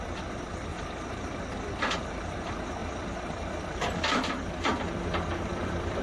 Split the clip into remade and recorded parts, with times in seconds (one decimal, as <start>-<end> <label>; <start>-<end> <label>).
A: 0.0-0.7 recorded; 0.7-1.4 remade; 1.4-2.8 recorded; 2.8-6.0 remade